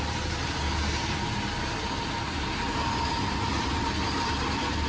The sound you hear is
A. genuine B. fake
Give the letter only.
A